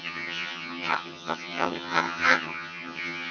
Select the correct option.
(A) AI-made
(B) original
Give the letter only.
A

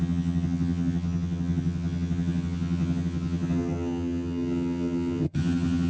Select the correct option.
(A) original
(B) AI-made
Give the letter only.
B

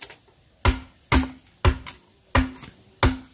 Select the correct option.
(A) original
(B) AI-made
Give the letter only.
A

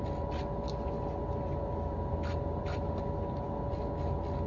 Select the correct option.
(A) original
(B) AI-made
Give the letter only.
A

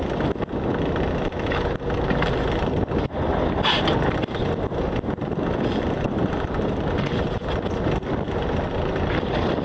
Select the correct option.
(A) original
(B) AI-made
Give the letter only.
A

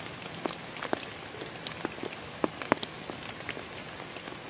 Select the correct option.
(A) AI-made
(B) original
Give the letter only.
B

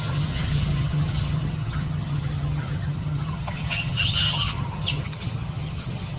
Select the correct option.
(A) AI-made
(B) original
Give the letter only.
A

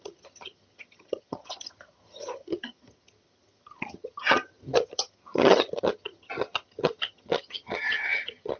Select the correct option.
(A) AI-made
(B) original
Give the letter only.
A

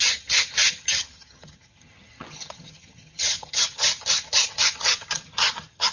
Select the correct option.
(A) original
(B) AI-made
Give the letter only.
B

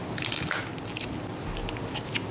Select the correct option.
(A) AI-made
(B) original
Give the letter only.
B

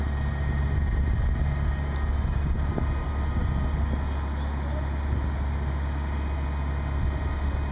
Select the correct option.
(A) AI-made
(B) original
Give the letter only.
B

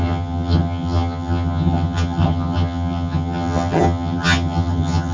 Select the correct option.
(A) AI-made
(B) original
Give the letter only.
A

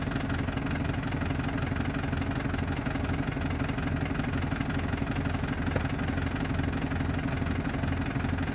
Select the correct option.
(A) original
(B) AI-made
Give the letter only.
A